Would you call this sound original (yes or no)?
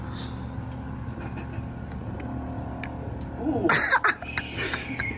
yes